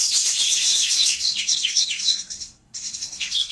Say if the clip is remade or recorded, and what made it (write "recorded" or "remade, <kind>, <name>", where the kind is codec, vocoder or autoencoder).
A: remade, codec, SNAC